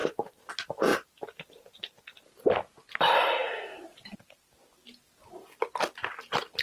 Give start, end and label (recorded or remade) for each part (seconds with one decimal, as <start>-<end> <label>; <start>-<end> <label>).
0.0-0.5 remade; 0.5-6.6 recorded